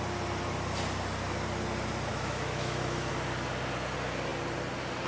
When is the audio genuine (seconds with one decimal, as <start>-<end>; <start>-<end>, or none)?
0.0-2.1; 3.1-5.1